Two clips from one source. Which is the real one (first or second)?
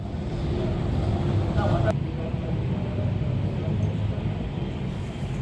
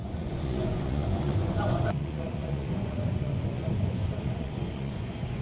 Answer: first